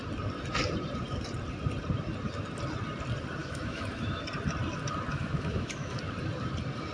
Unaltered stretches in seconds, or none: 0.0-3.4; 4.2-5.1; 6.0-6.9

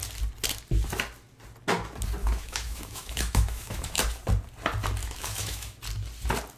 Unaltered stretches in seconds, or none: 0.0-2.2; 4.0-5.0; 5.8-6.6

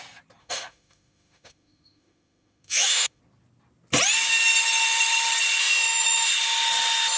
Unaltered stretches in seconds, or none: 0.0-0.4; 3.2-5.6; 6.3-7.2

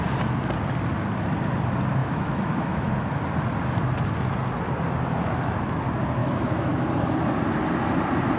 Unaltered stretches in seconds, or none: 0.0-2.0; 2.9-6.2; 6.9-8.4

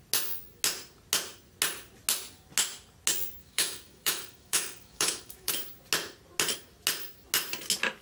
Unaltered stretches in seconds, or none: 0.0-3.4; 5.5-8.0